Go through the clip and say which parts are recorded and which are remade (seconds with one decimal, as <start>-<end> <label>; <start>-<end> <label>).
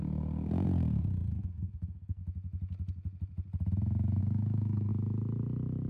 0.0-2.2 remade; 2.2-4.2 recorded; 4.2-4.9 remade; 4.9-5.9 recorded